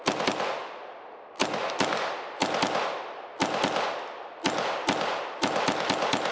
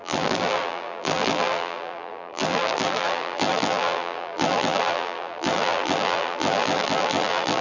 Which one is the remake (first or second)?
second